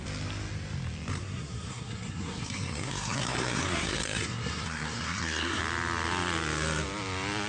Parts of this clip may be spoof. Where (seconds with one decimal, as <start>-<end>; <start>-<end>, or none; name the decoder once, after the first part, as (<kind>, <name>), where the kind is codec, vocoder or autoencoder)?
1.1-5.6 (codec, SNAC)